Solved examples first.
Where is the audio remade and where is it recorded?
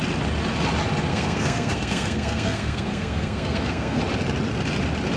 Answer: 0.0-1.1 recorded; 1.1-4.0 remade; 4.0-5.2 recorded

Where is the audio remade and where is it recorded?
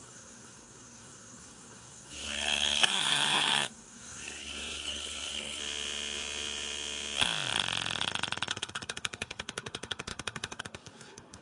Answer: 0.0-5.6 remade; 5.6-8.5 recorded; 8.5-11.4 remade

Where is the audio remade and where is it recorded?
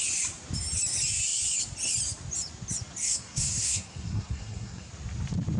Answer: 0.0-3.0 recorded; 3.0-4.9 remade; 4.9-5.6 recorded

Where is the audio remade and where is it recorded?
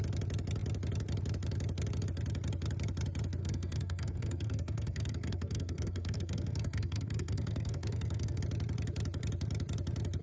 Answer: 0.0-3.4 recorded; 3.4-8.4 remade; 8.4-10.2 recorded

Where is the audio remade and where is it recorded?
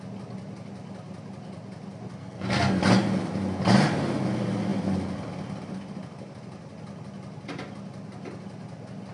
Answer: 0.0-2.2 recorded; 2.2-2.8 remade; 2.8-9.1 recorded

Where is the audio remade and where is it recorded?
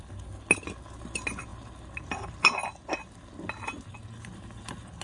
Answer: 0.0-5.0 recorded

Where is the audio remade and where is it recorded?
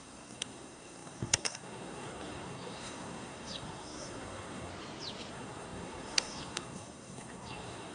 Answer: 0.0-4.7 remade; 4.7-5.3 recorded; 5.3-7.9 remade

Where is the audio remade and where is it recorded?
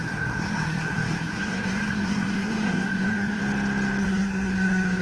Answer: 0.0-3.4 remade; 3.4-4.0 recorded; 4.0-5.0 remade